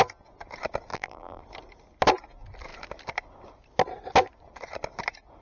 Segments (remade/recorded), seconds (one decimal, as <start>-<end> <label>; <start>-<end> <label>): 0.0-0.9 recorded; 0.9-1.4 remade; 1.4-5.4 recorded